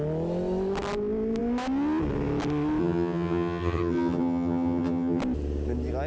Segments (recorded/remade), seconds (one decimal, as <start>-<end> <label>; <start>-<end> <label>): 0.0-2.8 recorded; 2.8-5.2 remade; 5.2-6.1 recorded